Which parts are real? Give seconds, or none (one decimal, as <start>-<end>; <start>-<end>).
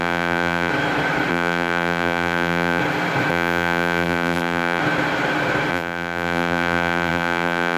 0.7-1.3; 2.8-3.3; 4.8-5.7